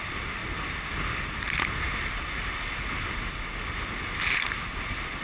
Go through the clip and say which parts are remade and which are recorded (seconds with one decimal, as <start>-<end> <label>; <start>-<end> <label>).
0.0-5.2 recorded